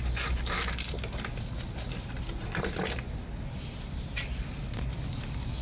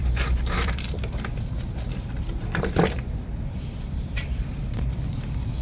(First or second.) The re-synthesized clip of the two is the second